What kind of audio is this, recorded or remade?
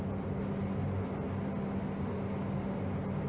recorded